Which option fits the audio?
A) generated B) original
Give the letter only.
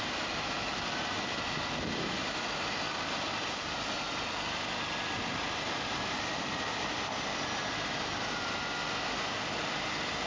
B